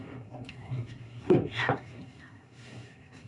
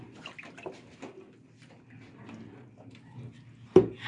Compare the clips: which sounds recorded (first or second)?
second